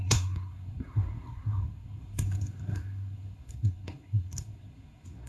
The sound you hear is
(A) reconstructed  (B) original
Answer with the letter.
A